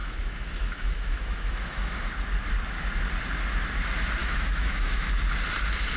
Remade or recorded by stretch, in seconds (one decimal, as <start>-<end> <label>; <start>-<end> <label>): 0.0-2.1 remade; 2.1-4.2 recorded; 4.2-5.1 remade; 5.1-6.0 recorded